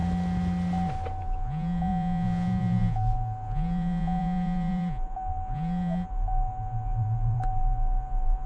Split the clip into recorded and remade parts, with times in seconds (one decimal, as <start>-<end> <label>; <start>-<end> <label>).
0.0-1.2 recorded; 1.2-8.5 remade